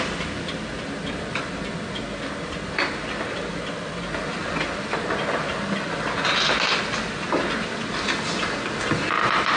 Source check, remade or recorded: recorded